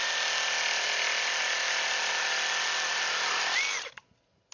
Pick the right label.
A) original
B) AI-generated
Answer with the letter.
A